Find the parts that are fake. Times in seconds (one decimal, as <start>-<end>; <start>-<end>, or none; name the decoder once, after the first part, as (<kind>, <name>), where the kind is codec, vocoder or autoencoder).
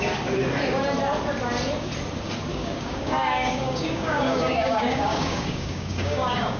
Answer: 2.5-6.6 (codec, DAC)